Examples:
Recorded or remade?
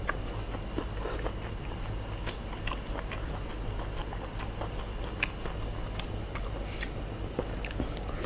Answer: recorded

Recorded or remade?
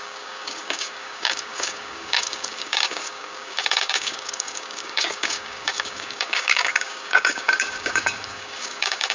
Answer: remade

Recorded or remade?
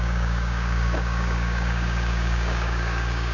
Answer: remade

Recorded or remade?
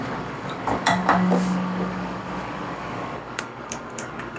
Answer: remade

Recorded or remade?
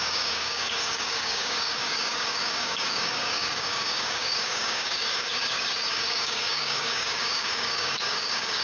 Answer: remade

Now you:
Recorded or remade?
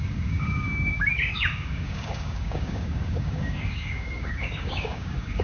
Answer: remade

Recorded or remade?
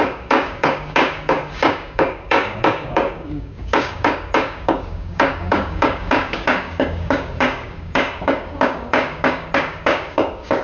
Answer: remade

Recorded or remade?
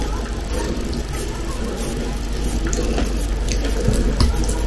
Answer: recorded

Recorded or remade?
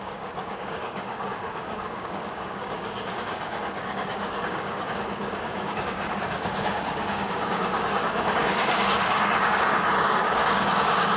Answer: remade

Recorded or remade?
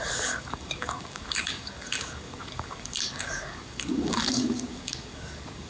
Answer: remade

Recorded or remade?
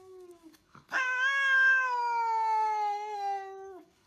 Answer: remade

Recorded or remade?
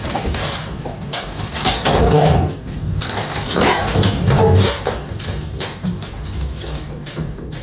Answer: remade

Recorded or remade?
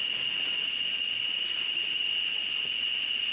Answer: recorded